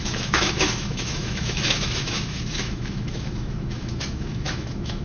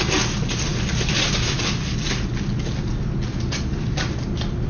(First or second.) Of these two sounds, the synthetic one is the first